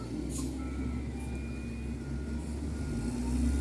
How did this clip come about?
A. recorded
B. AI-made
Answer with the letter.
A